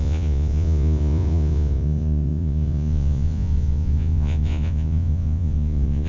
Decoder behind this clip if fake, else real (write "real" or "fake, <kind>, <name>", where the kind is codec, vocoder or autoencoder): fake, vocoder, Vocos